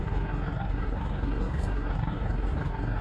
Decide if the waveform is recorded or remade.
remade